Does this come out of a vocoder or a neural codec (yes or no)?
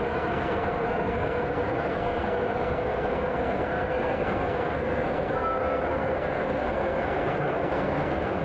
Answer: yes